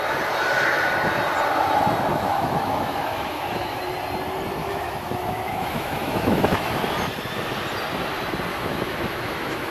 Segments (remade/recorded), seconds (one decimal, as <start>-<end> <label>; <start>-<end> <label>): 0.0-2.1 recorded; 2.1-3.8 remade; 3.8-4.6 recorded; 4.6-6.7 remade; 6.7-8.5 recorded; 8.5-9.7 remade